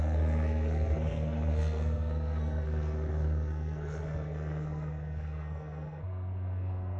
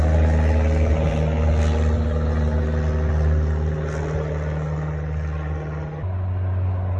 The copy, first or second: first